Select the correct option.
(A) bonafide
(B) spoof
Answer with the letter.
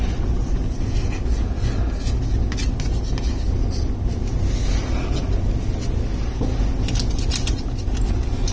A